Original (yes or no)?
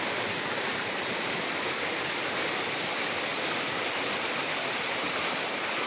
yes